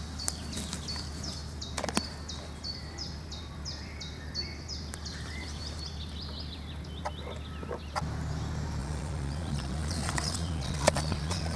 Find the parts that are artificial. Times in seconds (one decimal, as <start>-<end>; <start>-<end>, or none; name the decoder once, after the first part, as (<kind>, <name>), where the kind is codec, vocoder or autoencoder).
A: 8.8-11.6 (vocoder, Vocos)